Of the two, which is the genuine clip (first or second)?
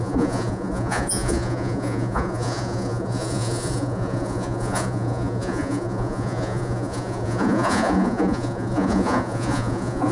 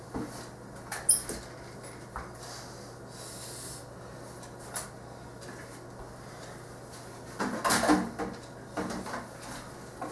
second